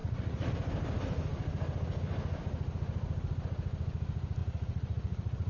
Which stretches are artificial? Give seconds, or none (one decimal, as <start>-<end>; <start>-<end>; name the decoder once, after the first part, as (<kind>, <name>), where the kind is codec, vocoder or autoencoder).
0.0-0.5 (vocoder, Vocos); 4.4-5.5